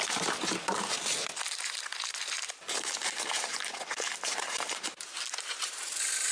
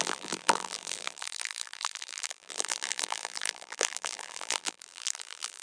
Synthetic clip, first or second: second